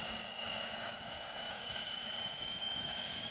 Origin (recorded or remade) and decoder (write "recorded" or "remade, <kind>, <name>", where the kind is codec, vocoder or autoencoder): remade, codec, DAC